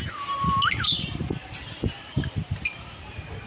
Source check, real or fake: real